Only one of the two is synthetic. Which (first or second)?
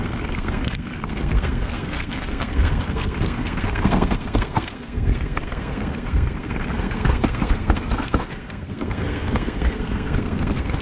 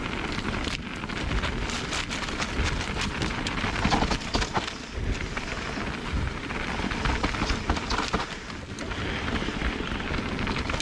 first